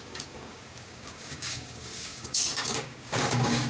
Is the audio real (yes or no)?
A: no